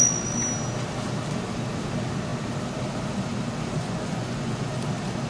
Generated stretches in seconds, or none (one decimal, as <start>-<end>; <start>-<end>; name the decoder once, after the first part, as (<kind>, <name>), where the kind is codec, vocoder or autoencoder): 3.8-4.7 (vocoder, Vocos)